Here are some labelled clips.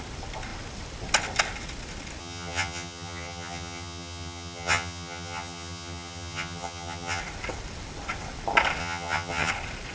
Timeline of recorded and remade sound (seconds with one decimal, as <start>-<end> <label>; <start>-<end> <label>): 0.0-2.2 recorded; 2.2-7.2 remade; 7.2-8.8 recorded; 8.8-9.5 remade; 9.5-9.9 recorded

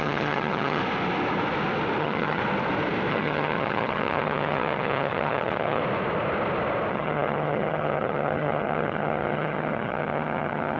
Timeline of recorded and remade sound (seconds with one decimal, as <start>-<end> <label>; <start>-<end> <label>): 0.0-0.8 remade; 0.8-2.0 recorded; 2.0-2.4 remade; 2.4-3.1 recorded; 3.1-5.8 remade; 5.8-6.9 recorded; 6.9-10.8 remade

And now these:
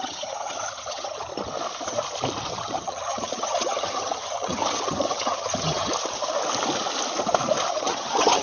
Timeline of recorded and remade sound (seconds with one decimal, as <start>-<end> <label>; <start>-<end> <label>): 0.0-1.3 remade; 1.3-2.5 recorded; 2.5-5.9 remade; 5.9-7.7 recorded; 7.7-8.4 remade